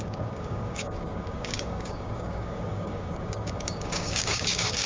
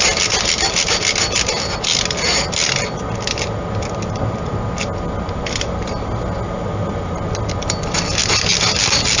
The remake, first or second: first